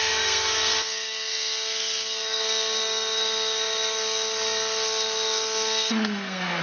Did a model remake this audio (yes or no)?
yes